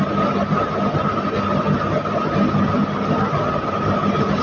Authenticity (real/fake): real